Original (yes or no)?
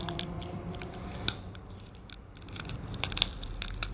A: no